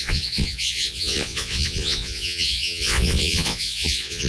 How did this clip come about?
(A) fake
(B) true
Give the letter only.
A